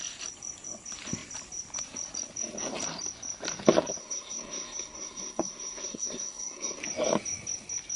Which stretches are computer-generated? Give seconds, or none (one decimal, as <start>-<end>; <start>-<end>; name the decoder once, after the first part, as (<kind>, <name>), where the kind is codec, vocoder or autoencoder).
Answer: 4.0-6.8 (codec, SNAC)